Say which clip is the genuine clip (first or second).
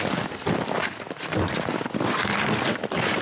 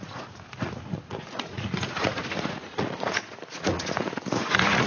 first